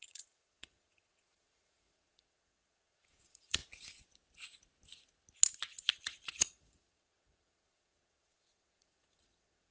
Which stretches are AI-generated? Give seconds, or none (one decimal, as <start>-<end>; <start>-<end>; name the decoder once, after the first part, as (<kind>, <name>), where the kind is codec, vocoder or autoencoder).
0.0-3.6 (vocoder, Vocos); 5.9-9.7